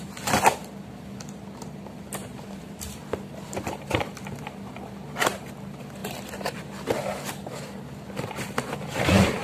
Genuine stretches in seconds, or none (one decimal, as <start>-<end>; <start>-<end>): 0.6-1.2